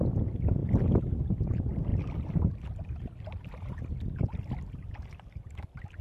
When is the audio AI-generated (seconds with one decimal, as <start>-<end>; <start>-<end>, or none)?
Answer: none